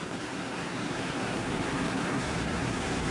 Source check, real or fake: fake